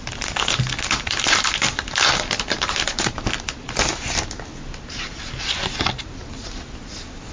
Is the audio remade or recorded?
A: recorded